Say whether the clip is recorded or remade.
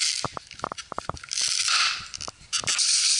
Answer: remade